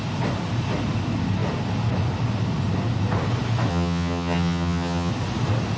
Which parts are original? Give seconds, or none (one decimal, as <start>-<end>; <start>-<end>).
0.0-3.7; 5.1-5.8